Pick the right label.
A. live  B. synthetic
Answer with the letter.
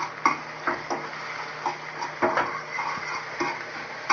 A